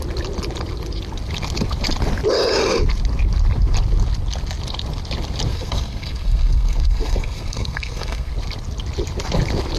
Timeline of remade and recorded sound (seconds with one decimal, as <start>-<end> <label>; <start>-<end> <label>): 0.0-5.5 recorded; 5.5-8.3 remade; 8.3-9.8 recorded